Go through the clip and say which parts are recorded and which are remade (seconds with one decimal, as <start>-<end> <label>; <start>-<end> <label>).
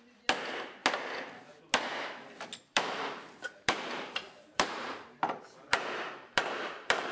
0.0-2.6 recorded; 2.6-7.1 remade